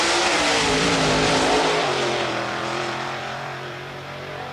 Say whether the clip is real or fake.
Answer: fake